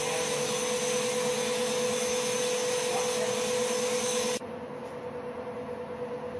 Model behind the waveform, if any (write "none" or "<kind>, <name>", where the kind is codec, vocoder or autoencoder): none